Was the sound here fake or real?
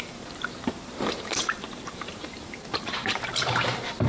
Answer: fake